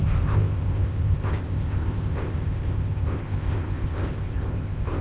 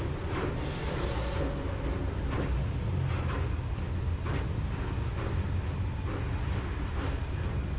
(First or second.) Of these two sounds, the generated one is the first